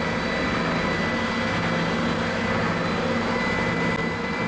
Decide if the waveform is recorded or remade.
recorded